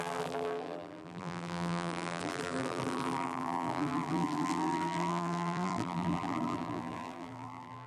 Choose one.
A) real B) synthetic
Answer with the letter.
B